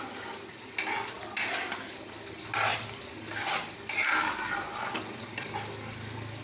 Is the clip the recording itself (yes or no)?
yes